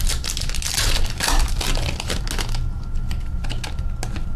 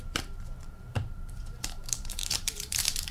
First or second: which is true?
first